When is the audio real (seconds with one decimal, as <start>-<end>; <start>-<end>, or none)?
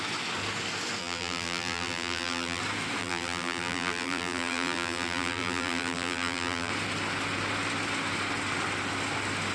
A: 0.0-1.0; 2.6-3.0; 6.7-9.5